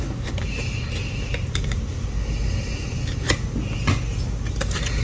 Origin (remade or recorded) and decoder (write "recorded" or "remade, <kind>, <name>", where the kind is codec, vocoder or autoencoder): recorded